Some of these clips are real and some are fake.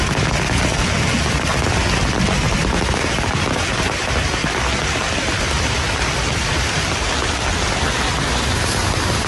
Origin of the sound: real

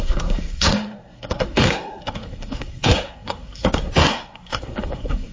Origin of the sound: fake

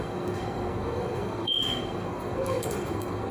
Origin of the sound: fake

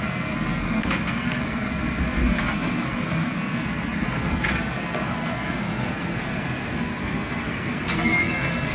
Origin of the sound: fake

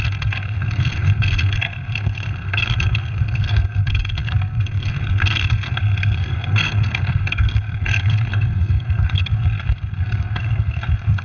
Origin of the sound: fake